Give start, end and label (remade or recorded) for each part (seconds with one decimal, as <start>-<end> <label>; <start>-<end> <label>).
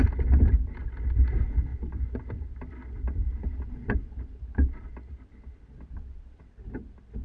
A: 0.0-7.2 recorded